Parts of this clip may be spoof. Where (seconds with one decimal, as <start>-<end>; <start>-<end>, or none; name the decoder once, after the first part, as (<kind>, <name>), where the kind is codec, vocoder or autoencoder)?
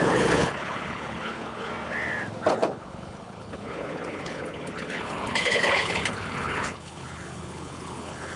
0.0-1.7 (codec, HILCodec); 2.5-8.4